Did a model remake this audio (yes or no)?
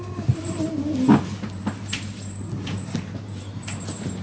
no